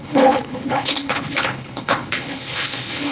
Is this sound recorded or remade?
remade